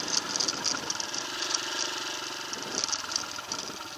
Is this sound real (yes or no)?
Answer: yes